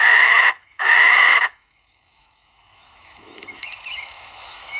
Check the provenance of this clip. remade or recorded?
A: remade